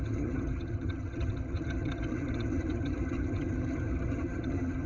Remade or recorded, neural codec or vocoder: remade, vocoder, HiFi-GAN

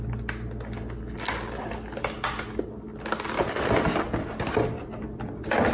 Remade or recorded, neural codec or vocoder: recorded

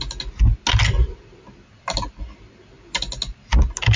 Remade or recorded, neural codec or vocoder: recorded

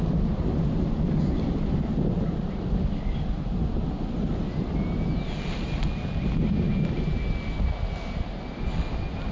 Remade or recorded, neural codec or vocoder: recorded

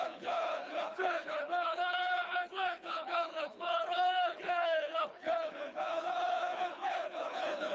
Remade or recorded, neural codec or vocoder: remade, codec, HILCodec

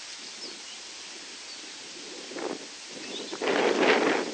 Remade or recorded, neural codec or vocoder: recorded